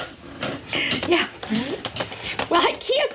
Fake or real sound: fake